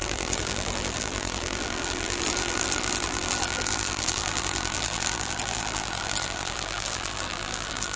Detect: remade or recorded remade